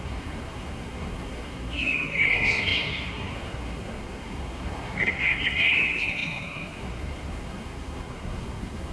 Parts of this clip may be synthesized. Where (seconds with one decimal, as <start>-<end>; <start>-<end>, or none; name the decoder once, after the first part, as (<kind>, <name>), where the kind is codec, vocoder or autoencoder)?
0.0-8.9 (codec, SNAC)